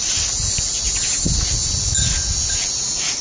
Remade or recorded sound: recorded